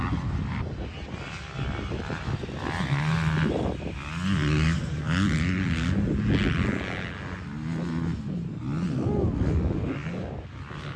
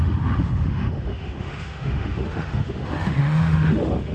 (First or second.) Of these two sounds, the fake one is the second